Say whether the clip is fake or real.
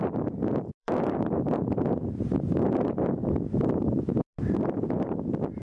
fake